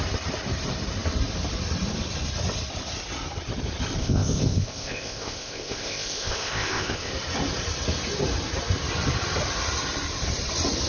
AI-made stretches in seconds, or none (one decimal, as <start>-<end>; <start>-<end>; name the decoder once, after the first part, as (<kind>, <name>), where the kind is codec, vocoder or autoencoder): 4.0-7.1 (codec, ZipCodec)